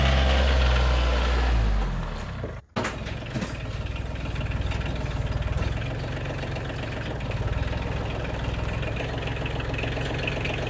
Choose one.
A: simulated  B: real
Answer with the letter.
B